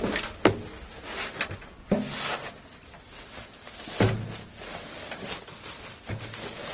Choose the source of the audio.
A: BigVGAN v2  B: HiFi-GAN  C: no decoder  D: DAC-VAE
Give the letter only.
C